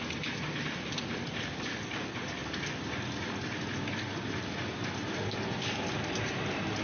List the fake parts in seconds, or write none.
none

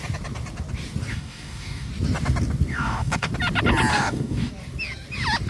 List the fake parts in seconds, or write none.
1.1-1.9 (codec, DAC); 2.7-3.3; 3.9-4.5